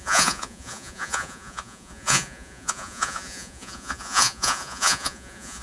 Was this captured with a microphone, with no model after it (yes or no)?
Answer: no